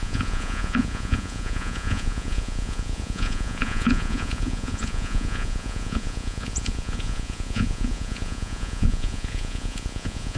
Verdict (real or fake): fake